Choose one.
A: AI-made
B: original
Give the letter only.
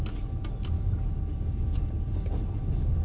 B